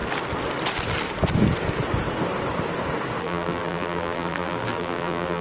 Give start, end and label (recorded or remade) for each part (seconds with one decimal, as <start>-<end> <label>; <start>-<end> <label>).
0.0-3.2 recorded; 3.2-5.4 remade